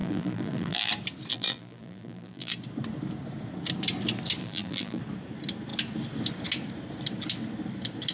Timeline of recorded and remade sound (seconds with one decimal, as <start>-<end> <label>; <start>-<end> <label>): 0.0-0.9 remade; 0.9-1.3 recorded; 1.3-2.5 remade; 2.5-4.4 recorded; 4.4-5.0 remade; 5.0-8.1 recorded